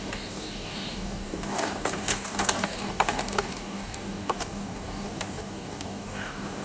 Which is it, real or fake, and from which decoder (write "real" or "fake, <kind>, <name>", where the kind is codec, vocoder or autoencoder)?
fake, codec, DAC